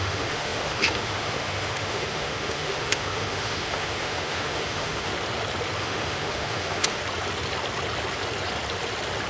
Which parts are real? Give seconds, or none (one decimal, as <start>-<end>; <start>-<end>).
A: 5.1-5.8; 7.0-9.3